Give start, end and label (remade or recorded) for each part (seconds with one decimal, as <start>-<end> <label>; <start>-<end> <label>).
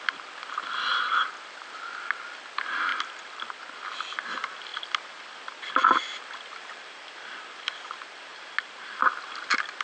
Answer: 0.0-0.9 recorded; 0.9-1.7 remade; 1.7-2.9 recorded; 2.9-4.0 remade; 4.0-4.7 recorded; 4.7-5.7 remade; 5.7-8.3 recorded; 8.3-9.0 remade; 9.0-9.8 recorded